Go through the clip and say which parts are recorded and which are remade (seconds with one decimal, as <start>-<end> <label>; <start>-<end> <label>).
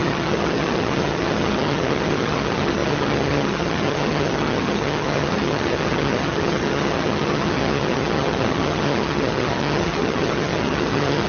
0.0-11.3 remade